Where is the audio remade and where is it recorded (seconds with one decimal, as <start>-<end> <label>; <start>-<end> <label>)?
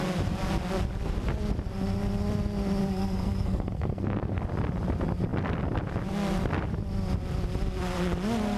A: 0.0-2.8 recorded; 2.8-4.4 remade; 4.4-8.6 recorded